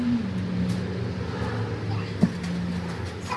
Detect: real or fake real